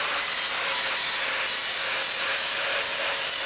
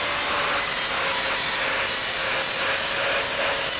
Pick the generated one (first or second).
first